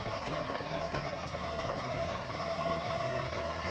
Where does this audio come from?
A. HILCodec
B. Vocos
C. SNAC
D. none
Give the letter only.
C